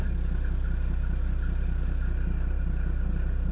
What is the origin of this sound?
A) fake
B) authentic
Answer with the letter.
B